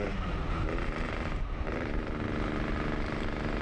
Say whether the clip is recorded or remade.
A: recorded